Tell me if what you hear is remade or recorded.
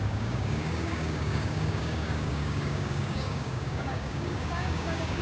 remade